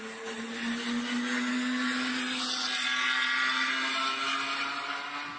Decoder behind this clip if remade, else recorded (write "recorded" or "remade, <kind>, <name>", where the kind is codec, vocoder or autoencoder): recorded